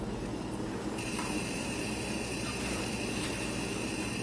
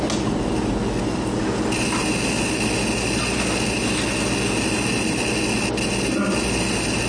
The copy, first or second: first